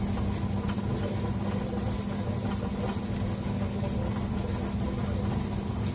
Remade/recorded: recorded